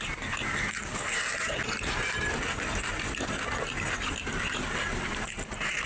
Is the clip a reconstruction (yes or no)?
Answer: no